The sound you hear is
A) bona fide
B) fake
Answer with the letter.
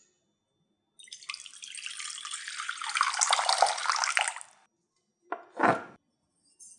A